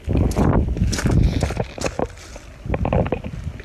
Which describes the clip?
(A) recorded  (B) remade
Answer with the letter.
A